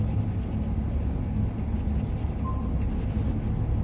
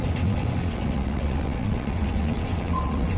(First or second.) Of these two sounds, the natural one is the first